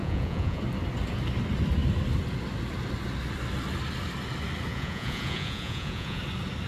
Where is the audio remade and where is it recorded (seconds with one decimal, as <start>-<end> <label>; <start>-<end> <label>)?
0.0-0.6 remade; 0.6-4.7 recorded; 4.7-6.2 remade; 6.2-6.7 recorded